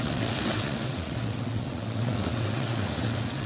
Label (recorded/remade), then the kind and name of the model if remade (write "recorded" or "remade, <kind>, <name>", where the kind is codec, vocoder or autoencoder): remade, vocoder, WaveNeXt